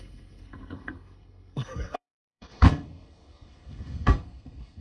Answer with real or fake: fake